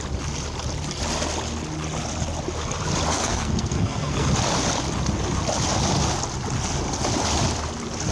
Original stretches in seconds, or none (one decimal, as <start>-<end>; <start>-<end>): 0.0-3.1; 4.3-8.1